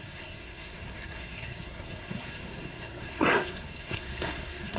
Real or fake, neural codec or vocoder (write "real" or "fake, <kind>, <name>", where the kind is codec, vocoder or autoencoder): fake, codec, SNAC